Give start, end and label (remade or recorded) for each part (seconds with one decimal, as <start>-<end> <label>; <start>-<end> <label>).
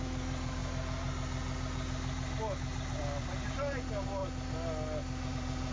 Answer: 0.0-0.6 remade; 0.6-3.0 recorded; 3.0-4.2 remade; 4.2-5.3 recorded; 5.3-5.7 remade